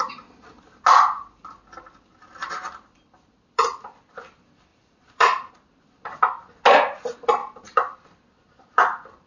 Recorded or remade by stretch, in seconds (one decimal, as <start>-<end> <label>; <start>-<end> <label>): 0.0-4.7 recorded; 4.7-5.5 remade; 5.5-7.4 recorded; 7.4-8.0 remade; 8.0-9.3 recorded